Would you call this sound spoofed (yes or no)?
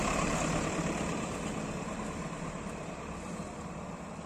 yes